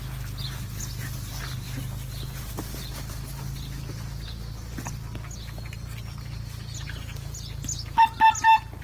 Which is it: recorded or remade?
recorded